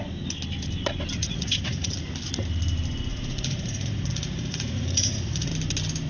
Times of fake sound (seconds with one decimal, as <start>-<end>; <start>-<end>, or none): 1.2-1.9; 3.1-5.5

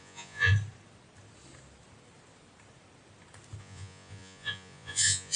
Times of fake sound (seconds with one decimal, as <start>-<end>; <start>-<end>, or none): 0.0-0.5; 3.6-5.4

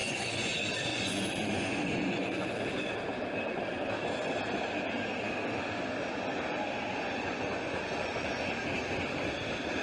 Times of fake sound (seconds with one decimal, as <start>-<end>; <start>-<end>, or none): 0.0-0.5; 0.9-2.6; 6.9-8.5

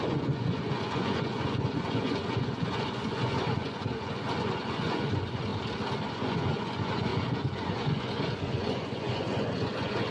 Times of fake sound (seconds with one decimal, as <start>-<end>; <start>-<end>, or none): 0.0-5.5; 6.1-10.1